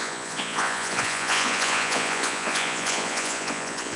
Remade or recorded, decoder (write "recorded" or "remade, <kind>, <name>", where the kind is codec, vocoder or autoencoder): remade, vocoder, Vocos